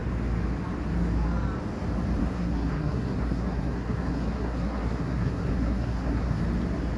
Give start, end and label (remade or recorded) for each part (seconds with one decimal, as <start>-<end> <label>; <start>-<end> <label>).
0.0-2.2 recorded; 2.2-6.4 remade; 6.4-7.0 recorded